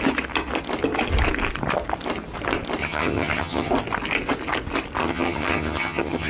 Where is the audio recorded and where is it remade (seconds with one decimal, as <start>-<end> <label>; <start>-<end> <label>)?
0.0-2.8 recorded; 2.8-3.7 remade; 3.7-5.0 recorded; 5.0-6.3 remade